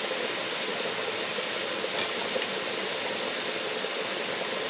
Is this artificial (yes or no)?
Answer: no